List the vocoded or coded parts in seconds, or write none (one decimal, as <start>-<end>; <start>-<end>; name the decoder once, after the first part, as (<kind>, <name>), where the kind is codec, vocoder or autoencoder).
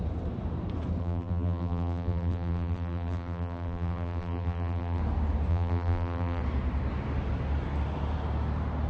1.0-5.0 (vocoder, BigVGAN v2); 5.5-6.4